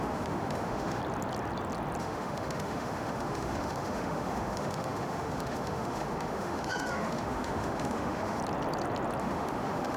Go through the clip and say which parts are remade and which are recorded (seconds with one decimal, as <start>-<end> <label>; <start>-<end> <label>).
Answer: 0.0-1.0 remade; 1.0-2.0 recorded; 2.0-8.4 remade; 8.4-9.2 recorded; 9.2-10.0 remade